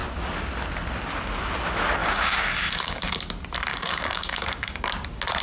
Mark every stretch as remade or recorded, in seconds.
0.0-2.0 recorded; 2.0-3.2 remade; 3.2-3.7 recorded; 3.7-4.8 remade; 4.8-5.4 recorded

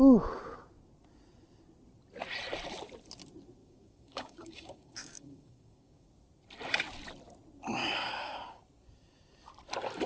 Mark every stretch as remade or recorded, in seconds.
0.0-3.6 recorded; 3.6-6.1 remade; 6.1-7.8 recorded; 7.8-8.6 remade; 8.6-10.1 recorded

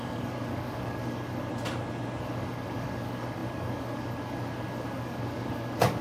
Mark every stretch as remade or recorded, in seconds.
0.0-1.5 remade; 1.5-2.2 recorded; 2.2-6.0 remade

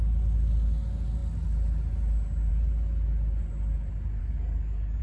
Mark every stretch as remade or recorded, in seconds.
0.0-4.2 recorded; 4.2-5.0 remade

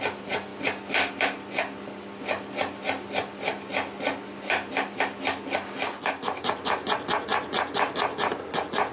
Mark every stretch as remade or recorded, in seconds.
0.0-8.9 recorded